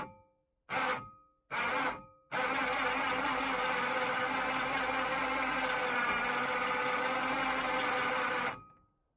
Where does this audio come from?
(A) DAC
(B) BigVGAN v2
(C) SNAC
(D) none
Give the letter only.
D